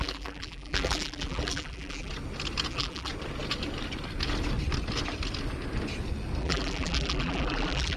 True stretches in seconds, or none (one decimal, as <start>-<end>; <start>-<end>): 2.1-2.7; 3.1-6.4